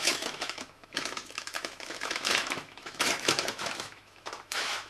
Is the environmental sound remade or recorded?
remade